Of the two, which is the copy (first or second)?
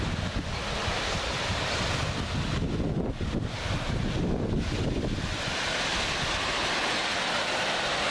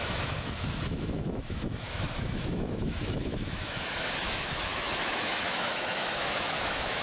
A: second